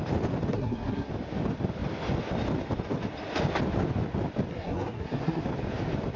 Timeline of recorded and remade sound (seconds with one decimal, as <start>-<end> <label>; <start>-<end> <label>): 0.0-0.5 recorded; 0.5-1.1 remade; 1.1-4.5 recorded; 4.5-5.4 remade; 5.4-6.2 recorded